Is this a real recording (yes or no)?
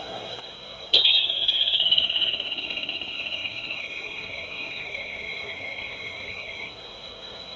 no